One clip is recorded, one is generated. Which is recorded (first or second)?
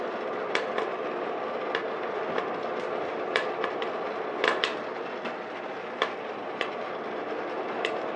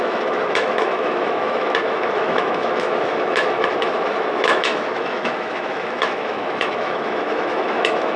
first